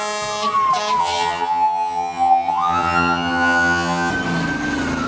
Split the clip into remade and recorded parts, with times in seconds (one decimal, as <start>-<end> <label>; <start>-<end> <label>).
0.0-1.0 recorded; 1.0-4.1 remade; 4.1-5.1 recorded